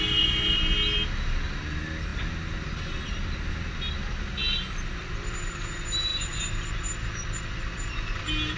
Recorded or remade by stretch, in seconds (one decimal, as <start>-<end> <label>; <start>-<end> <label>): 0.0-6.1 recorded; 6.1-8.2 remade; 8.2-8.6 recorded